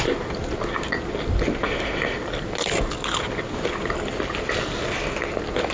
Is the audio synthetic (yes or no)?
no